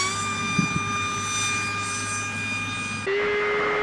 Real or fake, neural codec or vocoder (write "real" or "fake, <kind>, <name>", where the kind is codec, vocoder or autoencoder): real